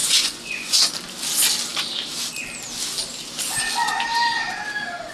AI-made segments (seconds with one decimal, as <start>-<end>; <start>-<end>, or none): 0.0-0.9